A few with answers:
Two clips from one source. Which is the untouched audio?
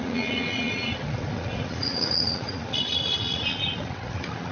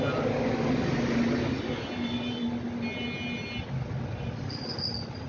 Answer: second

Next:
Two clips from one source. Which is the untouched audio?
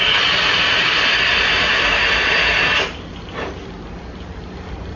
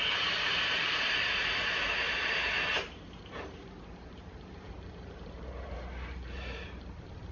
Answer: first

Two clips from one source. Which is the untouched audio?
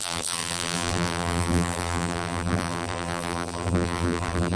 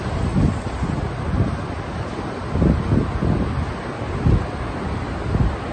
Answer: second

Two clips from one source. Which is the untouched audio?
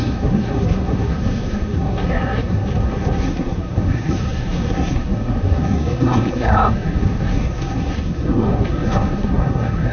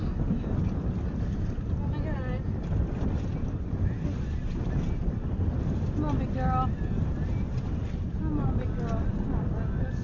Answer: second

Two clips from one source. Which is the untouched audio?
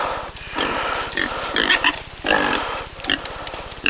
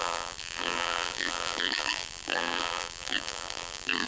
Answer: first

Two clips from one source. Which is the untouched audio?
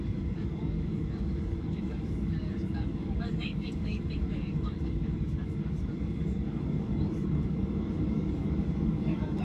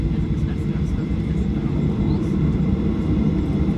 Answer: second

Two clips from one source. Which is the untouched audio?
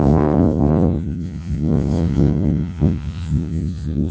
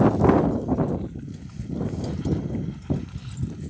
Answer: second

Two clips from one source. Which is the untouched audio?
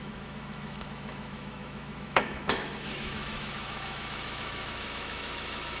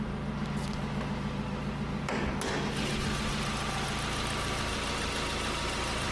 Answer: second